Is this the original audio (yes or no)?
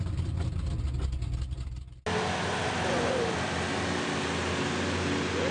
yes